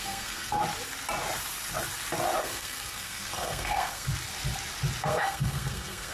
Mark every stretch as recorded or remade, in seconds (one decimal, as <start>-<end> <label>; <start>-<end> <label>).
0.0-0.6 remade; 0.6-2.4 recorded; 2.4-4.1 remade; 4.1-5.0 recorded; 5.0-6.1 remade